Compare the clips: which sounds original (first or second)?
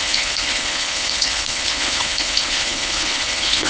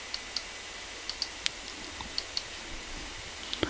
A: second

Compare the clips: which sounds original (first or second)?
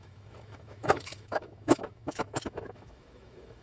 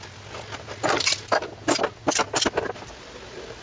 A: second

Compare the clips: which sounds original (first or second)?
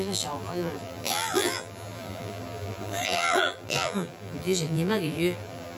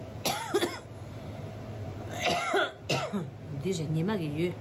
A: second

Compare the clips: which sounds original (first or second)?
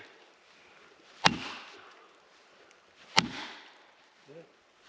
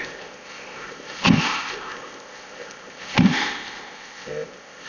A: first